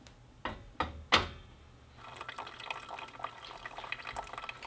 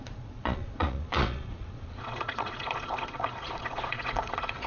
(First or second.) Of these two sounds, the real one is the first